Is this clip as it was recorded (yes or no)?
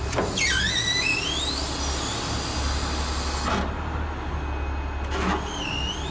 yes